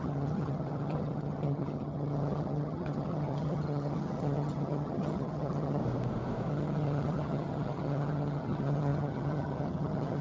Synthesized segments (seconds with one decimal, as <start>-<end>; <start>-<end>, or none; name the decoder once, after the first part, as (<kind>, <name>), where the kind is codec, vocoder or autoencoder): 0.0-5.8 (vocoder, HiFi-GAN); 6.5-10.2